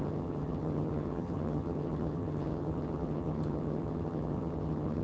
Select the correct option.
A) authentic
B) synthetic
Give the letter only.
B